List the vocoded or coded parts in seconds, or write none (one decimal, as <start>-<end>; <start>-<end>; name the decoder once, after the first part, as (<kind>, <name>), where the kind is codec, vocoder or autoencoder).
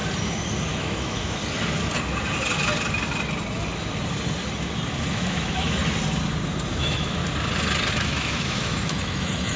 0.7-1.4 (autoencoder, DAC-VAE); 5.1-5.8; 6.8-7.2; 7.9-9.6